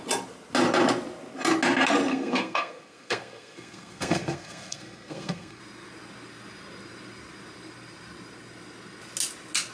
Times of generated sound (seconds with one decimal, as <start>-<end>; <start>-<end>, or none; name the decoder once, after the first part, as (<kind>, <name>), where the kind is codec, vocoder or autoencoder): 2.1-5.6 (codec, SNAC)